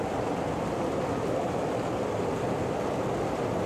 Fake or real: real